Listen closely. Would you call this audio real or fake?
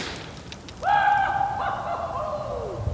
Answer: real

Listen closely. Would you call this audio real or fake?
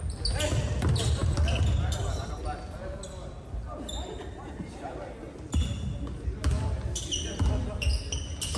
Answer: real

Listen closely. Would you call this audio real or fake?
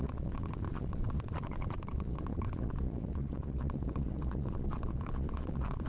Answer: fake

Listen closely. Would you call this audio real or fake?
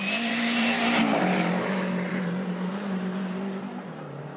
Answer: fake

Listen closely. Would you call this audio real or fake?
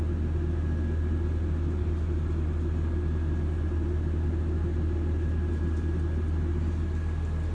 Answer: real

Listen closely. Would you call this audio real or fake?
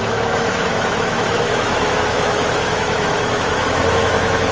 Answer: fake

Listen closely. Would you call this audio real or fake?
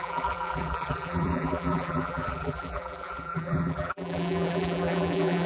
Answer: fake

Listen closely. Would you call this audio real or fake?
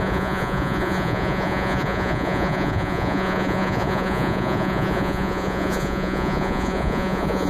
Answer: fake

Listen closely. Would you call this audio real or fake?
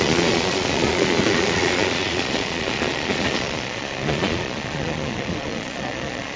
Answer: fake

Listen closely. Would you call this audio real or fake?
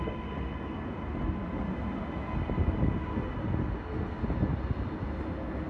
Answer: real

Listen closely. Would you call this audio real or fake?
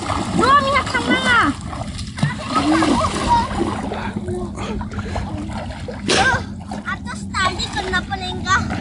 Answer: real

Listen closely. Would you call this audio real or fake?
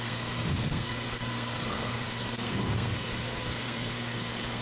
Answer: fake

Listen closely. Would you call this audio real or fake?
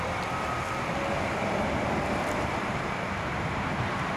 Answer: fake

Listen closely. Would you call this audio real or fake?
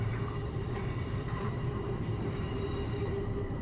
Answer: fake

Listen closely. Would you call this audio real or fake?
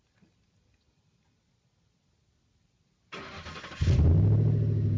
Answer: real